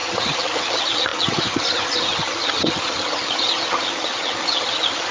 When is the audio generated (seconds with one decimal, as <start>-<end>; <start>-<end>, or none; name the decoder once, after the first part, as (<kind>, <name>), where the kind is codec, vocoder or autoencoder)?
0.0-5.1 (vocoder, HiFi-GAN)

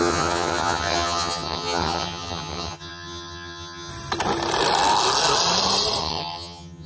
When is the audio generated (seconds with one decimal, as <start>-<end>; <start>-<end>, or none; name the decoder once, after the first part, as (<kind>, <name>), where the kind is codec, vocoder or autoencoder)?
0.0-3.9 (vocoder, HiFi-GAN); 6.0-6.9

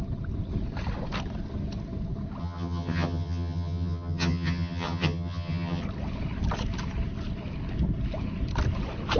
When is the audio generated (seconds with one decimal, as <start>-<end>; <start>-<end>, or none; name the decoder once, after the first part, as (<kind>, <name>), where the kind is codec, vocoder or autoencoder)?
2.4-5.8 (vocoder, HiFi-GAN)

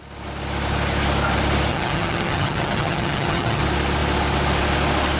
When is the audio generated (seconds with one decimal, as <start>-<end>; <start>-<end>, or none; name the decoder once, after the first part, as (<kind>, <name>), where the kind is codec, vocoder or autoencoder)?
1.7-3.6 (vocoder, HiFi-GAN)